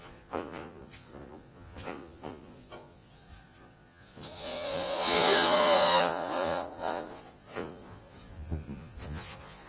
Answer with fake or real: fake